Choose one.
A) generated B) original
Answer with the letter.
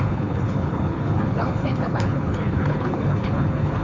A